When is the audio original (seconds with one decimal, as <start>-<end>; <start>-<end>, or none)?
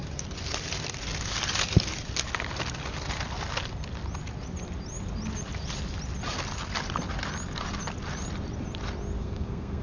0.0-9.2